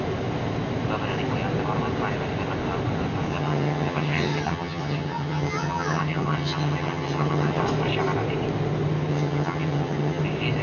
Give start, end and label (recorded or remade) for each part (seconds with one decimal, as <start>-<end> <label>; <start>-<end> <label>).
0.0-3.3 recorded; 3.3-7.6 remade; 7.6-9.1 recorded; 9.1-10.2 remade; 10.2-10.6 recorded